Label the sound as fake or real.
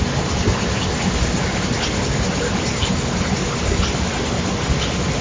real